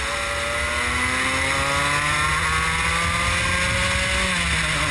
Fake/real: real